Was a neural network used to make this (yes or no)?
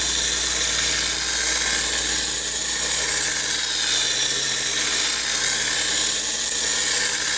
no